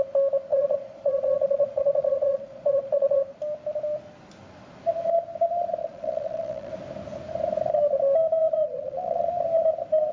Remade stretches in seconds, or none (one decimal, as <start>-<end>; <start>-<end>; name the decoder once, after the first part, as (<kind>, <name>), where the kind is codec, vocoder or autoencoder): 0.5-3.2 (vocoder, Vocos); 5.8-6.7; 8.4-9.3